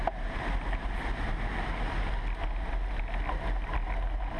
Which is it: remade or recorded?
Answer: recorded